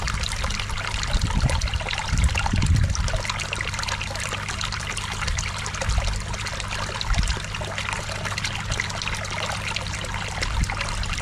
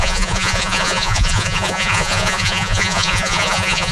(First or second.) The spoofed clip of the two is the second